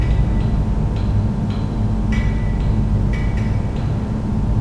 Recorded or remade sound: recorded